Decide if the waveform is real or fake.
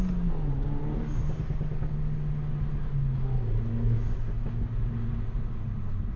real